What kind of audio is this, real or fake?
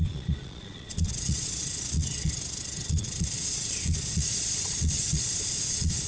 fake